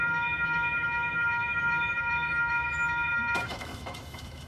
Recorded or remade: remade